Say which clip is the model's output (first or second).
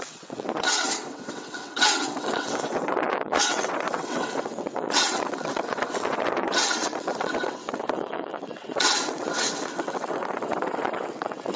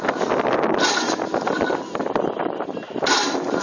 first